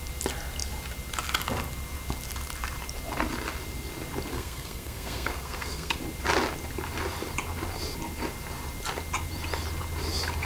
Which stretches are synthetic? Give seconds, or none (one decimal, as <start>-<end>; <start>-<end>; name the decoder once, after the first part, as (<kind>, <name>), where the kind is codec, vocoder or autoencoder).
4.3-6.0 (codec, SNAC)